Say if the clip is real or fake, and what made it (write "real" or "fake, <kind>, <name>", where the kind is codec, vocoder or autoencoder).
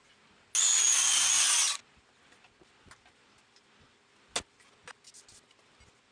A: real